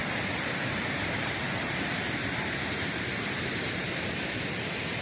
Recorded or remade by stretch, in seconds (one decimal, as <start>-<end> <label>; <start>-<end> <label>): 0.0-5.0 remade